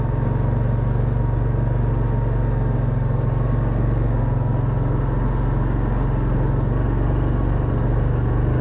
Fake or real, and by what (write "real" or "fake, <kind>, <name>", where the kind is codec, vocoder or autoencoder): real